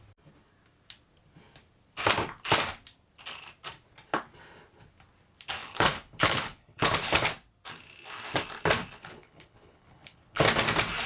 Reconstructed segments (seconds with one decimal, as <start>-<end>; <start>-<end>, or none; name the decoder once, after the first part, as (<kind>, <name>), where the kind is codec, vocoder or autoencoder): 5.6-7.3 (codec, HILCodec); 9.0-10.4